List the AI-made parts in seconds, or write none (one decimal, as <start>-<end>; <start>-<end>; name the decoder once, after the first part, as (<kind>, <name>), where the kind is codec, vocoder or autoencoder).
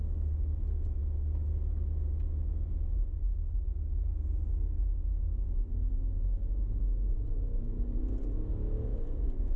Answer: 7.1-8.0 (vocoder, Vocos); 8.9-9.6